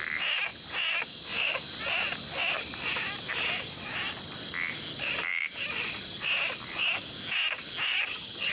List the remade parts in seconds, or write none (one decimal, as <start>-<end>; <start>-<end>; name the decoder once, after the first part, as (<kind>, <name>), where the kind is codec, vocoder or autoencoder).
7.9-8.5 (vocoder, HiFi-GAN)